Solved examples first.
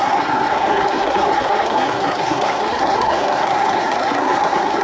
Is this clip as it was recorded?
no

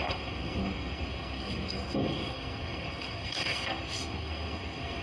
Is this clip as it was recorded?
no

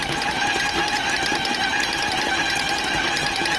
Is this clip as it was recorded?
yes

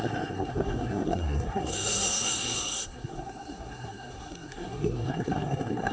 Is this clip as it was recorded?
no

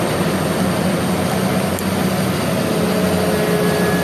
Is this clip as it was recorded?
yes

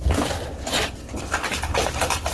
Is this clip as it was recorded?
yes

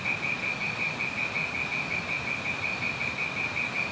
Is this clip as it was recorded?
yes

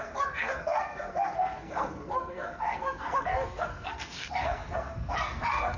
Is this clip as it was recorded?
no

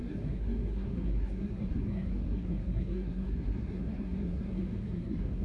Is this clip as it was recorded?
no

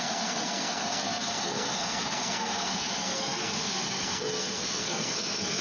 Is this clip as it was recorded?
no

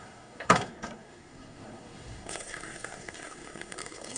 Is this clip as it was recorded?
no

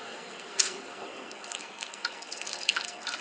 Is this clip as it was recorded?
no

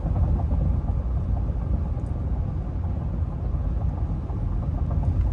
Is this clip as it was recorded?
yes